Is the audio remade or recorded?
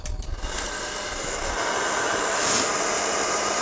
recorded